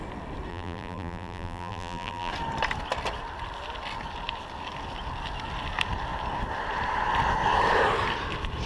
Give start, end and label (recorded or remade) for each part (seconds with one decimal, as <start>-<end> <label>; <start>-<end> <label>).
0.0-0.5 recorded; 0.5-2.3 remade; 2.3-8.7 recorded